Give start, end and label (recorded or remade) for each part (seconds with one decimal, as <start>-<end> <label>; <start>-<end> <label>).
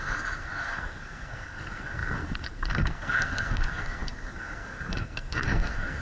0.0-6.0 remade